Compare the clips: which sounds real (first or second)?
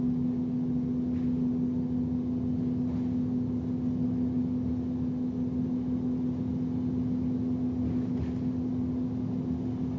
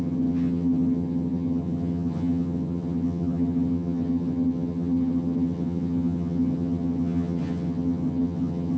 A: first